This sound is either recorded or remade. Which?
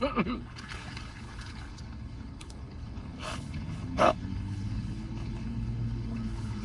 remade